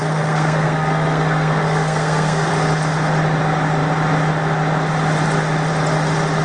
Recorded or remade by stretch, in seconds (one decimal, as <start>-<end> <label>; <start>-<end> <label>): 0.0-2.5 remade; 2.5-6.4 recorded